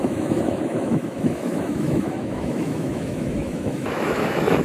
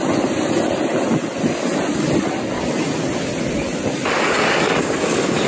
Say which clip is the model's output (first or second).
first